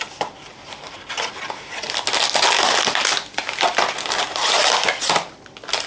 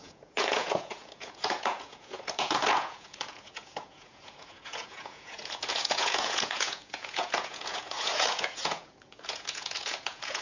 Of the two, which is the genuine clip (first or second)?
first